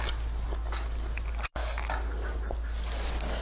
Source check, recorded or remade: recorded